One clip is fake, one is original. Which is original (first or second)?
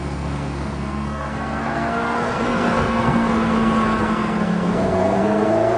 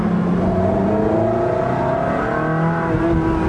second